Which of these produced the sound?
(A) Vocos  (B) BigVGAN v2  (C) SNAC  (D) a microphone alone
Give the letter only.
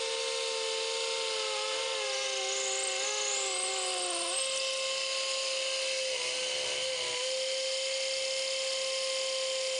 D